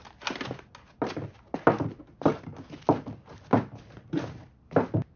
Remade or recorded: recorded